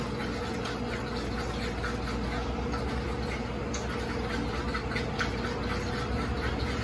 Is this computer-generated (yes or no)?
no